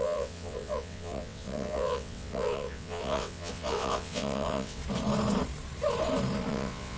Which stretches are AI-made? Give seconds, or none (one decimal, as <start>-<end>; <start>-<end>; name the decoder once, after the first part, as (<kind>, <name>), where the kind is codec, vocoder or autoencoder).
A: 0.0-4.8 (vocoder, WaveNeXt); 6.5-7.0